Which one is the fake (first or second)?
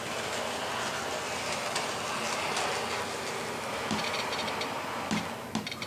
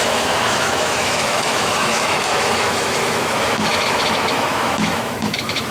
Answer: second